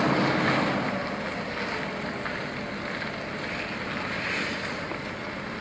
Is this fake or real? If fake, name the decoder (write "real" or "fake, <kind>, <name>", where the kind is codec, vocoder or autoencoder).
real